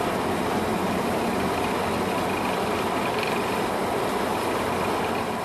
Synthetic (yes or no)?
no